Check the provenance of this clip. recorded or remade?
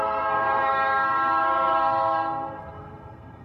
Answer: remade